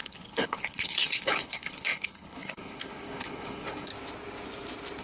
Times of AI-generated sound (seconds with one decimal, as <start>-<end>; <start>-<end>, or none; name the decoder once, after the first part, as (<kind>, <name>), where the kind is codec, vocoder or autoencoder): 0.0-3.9 (codec, HILCodec)